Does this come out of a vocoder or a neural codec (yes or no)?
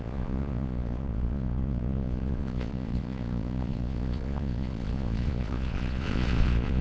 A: yes